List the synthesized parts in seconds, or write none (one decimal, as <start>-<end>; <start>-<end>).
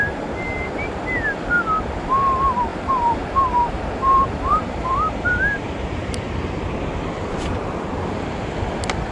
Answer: 2.7-6.6